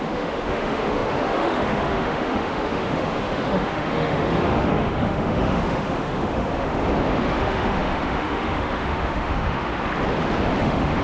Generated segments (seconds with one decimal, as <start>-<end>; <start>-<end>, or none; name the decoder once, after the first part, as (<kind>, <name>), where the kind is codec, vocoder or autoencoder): 0.0-6.8 (autoencoder, DAC-VAE); 7.3-9.7; 10.6-11.0